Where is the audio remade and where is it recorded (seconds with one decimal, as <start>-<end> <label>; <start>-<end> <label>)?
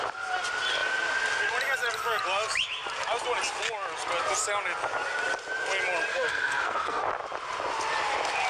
0.0-6.1 recorded; 6.1-7.0 remade; 7.0-8.5 recorded